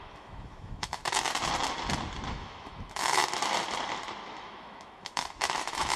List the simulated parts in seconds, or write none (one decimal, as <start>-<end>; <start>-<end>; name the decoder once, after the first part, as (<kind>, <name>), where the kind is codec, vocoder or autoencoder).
0.0-1.0 (autoencoder, DAC-VAE); 2.3-3.2; 4.3-6.0